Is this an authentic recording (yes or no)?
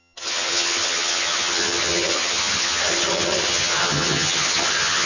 no